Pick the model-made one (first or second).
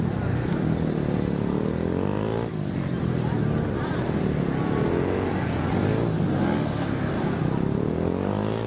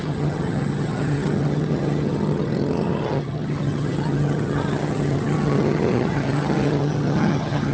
second